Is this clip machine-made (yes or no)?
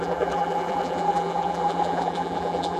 yes